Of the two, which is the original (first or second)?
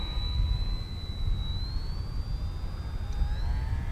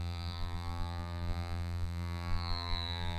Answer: first